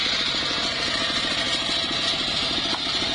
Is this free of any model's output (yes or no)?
yes